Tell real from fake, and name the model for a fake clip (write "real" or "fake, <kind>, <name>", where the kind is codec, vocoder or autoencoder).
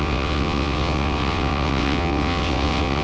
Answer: fake, vocoder, WaveNeXt